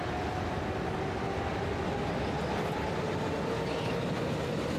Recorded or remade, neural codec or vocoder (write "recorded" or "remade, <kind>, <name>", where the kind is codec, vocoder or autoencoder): recorded